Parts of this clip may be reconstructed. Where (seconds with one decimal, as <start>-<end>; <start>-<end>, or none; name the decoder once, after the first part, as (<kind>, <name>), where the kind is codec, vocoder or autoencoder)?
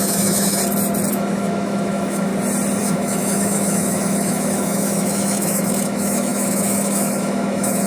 0.0-0.6 (autoencoder, DAC-VAE); 1.1-2.3; 2.8-7.9